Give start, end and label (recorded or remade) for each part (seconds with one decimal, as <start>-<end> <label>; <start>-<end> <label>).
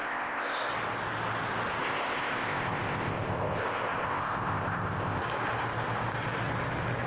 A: 0.0-0.7 remade; 0.7-1.8 recorded; 1.8-5.2 remade; 5.2-7.1 recorded